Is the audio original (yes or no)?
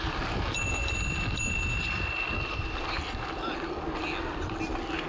yes